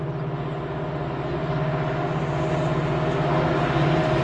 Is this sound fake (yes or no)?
no